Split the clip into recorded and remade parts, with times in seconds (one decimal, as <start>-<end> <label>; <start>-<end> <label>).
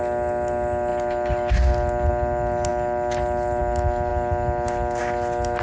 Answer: 0.0-5.6 recorded